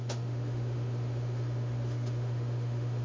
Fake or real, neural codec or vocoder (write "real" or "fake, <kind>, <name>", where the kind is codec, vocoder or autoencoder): fake, autoencoder, DAC-VAE